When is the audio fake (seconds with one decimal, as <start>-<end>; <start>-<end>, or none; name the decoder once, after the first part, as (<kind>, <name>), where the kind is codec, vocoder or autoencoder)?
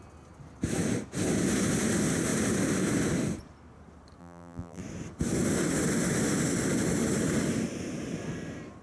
4.2-4.8 (vocoder, BigVGAN v2)